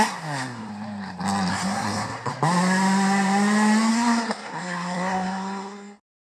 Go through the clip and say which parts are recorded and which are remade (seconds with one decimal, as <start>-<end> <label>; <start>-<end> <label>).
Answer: 0.0-0.7 remade; 0.7-1.5 recorded; 1.5-2.3 remade; 2.3-3.9 recorded; 3.9-6.3 remade